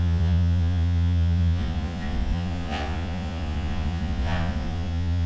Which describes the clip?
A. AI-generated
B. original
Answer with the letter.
A